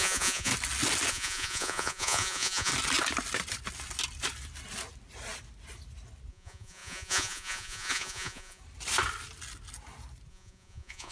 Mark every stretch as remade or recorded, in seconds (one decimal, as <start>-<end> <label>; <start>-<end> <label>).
0.0-0.5 remade; 0.5-1.1 recorded; 1.1-2.7 remade; 2.7-6.3 recorded; 6.3-8.6 remade; 8.6-10.3 recorded; 10.3-11.1 remade